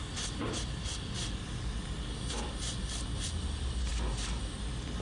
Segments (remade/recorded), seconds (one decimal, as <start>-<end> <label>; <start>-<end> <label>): 0.0-5.0 recorded